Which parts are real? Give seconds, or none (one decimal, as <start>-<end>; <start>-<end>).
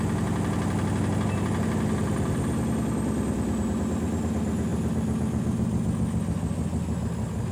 0.0-7.5